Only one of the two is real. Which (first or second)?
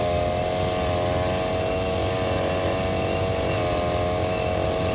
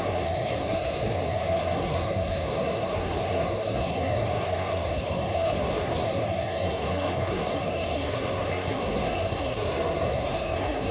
first